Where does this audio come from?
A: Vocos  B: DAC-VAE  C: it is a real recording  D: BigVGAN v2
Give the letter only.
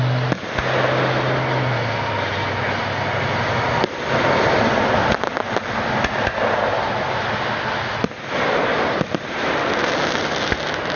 C